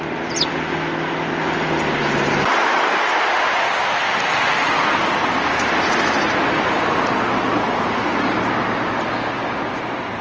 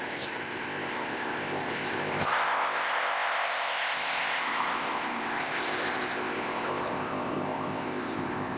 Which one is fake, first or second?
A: second